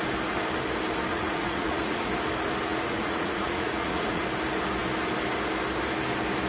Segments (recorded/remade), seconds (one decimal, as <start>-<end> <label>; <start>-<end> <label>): 0.0-1.1 recorded; 1.1-2.1 remade; 2.1-2.7 recorded; 2.7-4.2 remade; 4.2-6.5 recorded